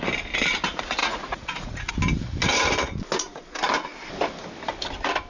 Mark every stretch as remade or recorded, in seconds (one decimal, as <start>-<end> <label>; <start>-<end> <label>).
0.0-1.0 recorded; 1.0-1.9 remade; 1.9-5.3 recorded